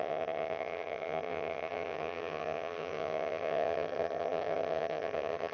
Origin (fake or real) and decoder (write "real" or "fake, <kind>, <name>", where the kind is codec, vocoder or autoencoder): fake, vocoder, HiFi-GAN